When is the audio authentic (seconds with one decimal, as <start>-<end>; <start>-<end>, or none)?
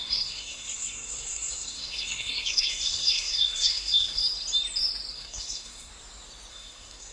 4.2-5.1; 5.9-6.5